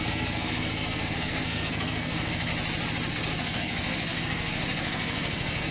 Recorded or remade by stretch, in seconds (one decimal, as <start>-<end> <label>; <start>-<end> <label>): 0.0-2.5 remade; 2.5-3.1 recorded; 3.1-5.7 remade